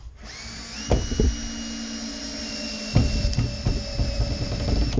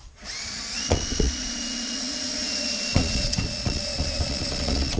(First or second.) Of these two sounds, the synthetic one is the second